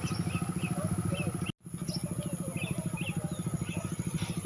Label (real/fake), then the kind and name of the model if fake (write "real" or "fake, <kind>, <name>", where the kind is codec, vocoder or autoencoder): real